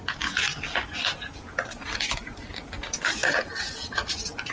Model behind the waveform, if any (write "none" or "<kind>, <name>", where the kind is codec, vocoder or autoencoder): none